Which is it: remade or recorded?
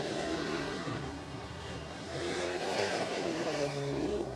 remade